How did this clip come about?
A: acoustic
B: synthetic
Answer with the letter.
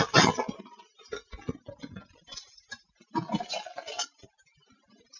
A